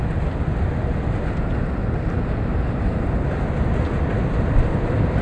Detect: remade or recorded recorded